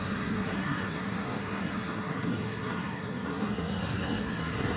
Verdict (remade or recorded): remade